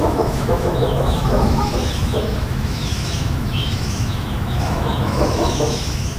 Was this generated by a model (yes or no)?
yes